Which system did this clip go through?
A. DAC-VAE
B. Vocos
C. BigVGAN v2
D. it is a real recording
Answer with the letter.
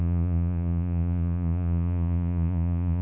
B